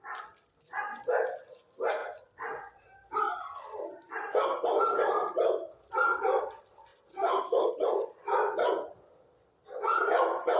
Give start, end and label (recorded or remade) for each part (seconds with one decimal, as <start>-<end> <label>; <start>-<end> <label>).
0.0-6.9 remade; 6.9-7.7 recorded; 7.7-10.6 remade